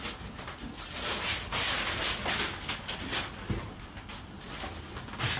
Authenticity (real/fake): real